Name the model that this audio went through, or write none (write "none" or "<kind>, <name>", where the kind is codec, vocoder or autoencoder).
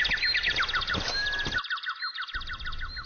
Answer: none